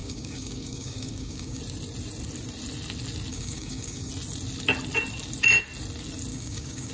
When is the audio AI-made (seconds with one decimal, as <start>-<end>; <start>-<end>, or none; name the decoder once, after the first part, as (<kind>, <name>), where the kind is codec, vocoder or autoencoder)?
0.0-1.6 (codec, DAC); 3.3-4.1; 6.3-6.9